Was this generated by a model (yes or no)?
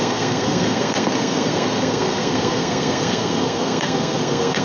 yes